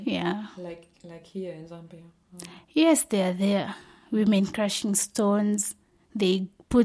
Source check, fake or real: real